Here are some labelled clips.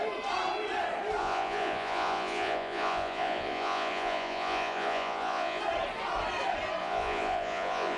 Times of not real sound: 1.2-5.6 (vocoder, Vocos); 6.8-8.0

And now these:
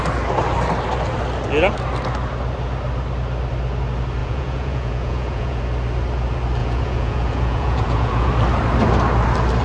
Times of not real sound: 4.2-5.6 (vocoder, Vocos); 6.6-8.3

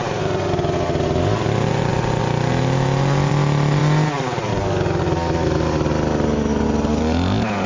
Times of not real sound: none

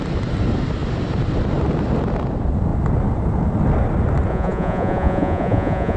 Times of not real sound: 4.3-6.0 (vocoder, Vocos)

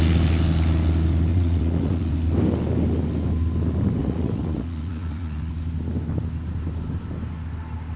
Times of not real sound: 1.3-2.1 (vocoder, Vocos); 4.0-5.5

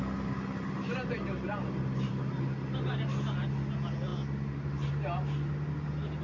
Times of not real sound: none

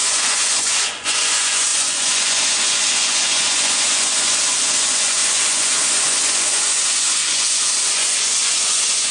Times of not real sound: 0.0-9.1 (vocoder, Vocos)

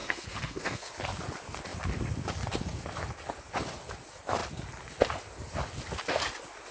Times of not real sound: 0.0-0.9 (codec, SNAC)